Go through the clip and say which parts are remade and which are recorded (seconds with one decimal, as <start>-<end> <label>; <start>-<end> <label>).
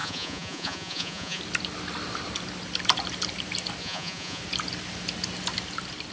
0.0-1.4 remade; 1.4-3.8 recorded; 3.8-4.4 remade; 4.4-6.1 recorded